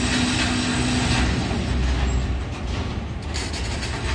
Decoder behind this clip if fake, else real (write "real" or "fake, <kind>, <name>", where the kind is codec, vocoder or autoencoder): real